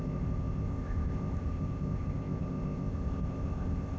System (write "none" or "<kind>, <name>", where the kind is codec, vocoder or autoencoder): codec, ZipCodec